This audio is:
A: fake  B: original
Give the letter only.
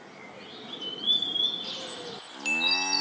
B